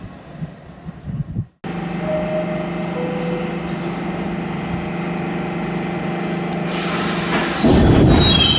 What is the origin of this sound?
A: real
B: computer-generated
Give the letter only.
A